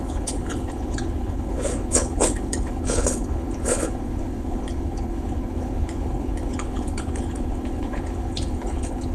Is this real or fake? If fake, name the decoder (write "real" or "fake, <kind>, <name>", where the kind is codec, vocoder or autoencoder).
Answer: fake, codec, HILCodec